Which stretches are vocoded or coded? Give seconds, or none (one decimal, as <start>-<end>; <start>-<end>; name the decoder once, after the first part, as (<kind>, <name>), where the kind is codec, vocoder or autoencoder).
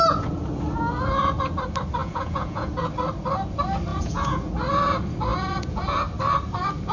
2.0-2.9 (vocoder, Vocos); 3.9-4.5; 5.3-6.0